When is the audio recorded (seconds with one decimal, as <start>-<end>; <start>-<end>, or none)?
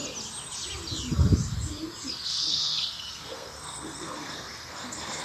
0.0-2.1